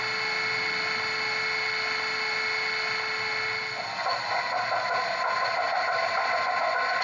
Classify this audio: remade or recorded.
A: recorded